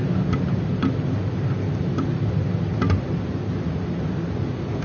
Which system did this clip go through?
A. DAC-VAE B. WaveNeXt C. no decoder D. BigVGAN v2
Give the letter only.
C